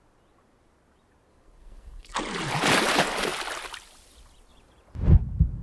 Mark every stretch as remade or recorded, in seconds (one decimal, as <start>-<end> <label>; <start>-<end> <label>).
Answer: 0.0-1.3 recorded; 1.3-2.2 remade; 2.2-5.6 recorded